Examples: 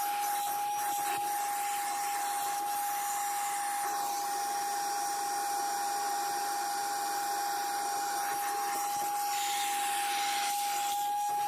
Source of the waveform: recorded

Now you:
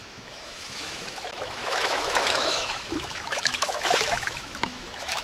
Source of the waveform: remade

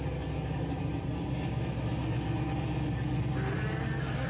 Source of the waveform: recorded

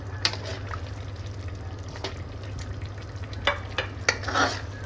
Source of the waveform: recorded